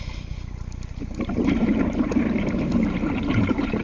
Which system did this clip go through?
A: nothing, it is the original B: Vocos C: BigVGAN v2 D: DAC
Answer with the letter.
C